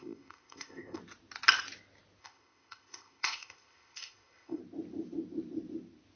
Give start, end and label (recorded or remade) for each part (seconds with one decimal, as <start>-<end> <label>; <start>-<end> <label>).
0.0-1.0 remade; 1.0-2.2 recorded; 2.2-4.6 remade; 4.6-6.2 recorded

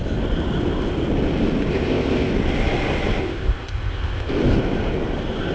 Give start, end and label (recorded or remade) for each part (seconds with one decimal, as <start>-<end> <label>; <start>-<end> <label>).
0.0-1.7 recorded; 1.7-2.3 remade; 2.3-3.2 recorded; 3.2-4.3 remade; 4.3-5.5 recorded

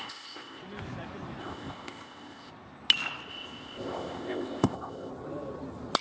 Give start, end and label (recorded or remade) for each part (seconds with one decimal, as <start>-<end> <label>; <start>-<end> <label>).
0.0-0.6 remade; 0.6-1.4 recorded; 1.4-2.5 remade; 2.5-3.3 recorded; 3.3-5.1 remade; 5.1-6.0 recorded

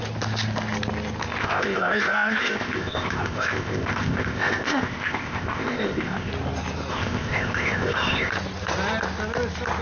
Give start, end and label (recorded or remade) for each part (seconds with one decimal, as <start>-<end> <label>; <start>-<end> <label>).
0.0-1.4 recorded; 1.4-6.3 remade; 6.3-6.9 recorded; 6.9-8.3 remade; 8.3-9.8 recorded

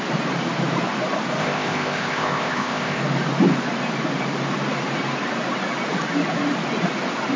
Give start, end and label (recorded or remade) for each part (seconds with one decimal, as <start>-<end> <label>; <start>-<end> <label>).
0.0-1.4 recorded; 1.4-3.0 remade; 3.0-7.4 recorded

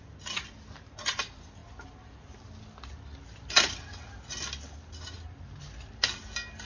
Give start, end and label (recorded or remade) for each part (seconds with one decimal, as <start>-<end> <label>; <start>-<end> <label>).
0.0-6.6 recorded